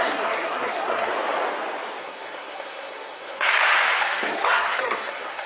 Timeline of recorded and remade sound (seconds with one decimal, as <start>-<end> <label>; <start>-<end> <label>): 0.0-1.1 remade; 1.1-2.0 recorded; 2.0-3.5 remade; 3.5-4.0 recorded; 4.0-5.5 remade